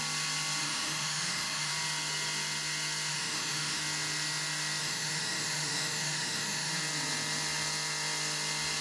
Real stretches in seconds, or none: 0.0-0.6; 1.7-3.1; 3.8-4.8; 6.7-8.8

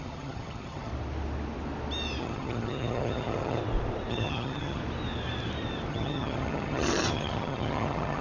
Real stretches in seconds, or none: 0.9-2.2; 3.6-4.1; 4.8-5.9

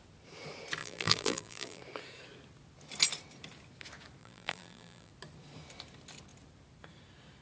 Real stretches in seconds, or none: 0.0-0.8; 1.8-4.2; 5.1-7.4